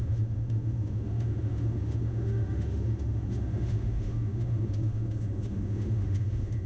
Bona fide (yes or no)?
no